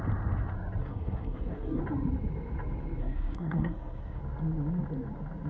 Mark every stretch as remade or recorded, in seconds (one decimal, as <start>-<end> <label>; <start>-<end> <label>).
0.0-0.8 recorded; 0.8-1.8 remade; 1.8-3.0 recorded; 3.0-4.2 remade; 4.2-5.5 recorded